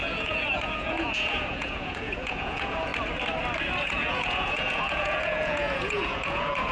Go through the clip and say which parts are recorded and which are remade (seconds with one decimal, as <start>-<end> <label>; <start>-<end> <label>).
0.0-2.9 remade; 2.9-3.8 recorded; 3.8-6.7 remade